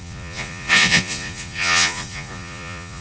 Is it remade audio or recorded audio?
remade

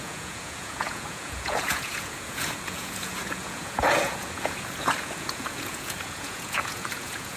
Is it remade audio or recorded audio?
remade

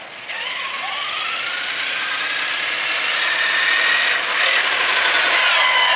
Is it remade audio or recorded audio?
recorded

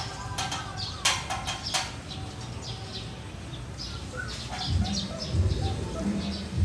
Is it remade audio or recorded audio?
recorded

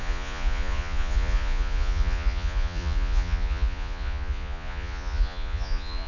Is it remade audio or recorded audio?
remade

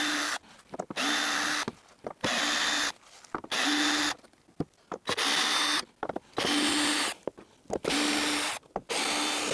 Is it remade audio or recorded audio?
recorded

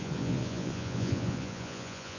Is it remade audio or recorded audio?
remade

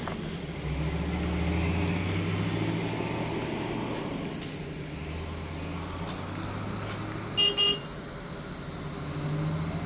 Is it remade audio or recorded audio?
recorded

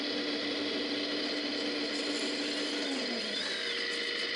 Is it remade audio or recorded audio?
recorded